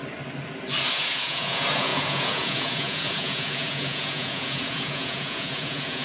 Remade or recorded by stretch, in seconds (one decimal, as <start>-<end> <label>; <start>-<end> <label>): 0.0-0.9 recorded; 0.9-6.0 remade